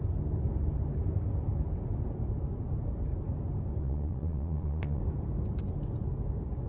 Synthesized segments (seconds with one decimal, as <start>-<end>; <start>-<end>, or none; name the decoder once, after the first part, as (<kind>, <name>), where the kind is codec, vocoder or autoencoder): 3.8-5.0 (vocoder, Vocos)

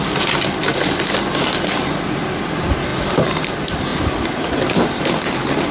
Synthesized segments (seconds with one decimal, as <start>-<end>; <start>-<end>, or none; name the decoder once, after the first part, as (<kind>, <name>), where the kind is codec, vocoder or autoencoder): none

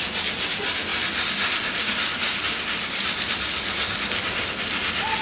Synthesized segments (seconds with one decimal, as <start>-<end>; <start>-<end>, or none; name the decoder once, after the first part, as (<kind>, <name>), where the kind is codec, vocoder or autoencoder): none

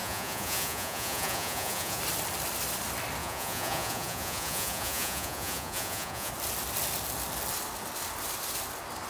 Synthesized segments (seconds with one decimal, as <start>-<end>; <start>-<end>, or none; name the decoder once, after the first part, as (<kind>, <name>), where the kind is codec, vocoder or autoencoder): 0.0-2.0 (vocoder, Vocos); 3.2-6.3